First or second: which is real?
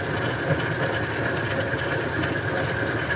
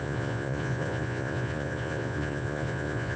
first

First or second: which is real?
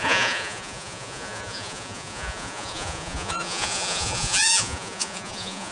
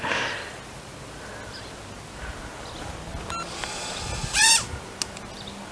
second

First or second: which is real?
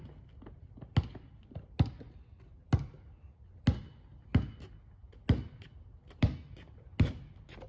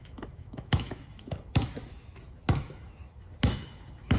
first